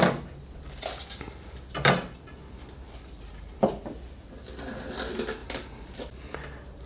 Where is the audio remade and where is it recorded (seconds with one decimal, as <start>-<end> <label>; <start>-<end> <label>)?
0.0-6.9 recorded